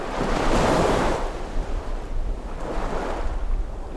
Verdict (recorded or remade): recorded